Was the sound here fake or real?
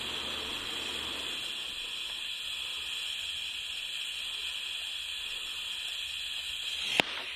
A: real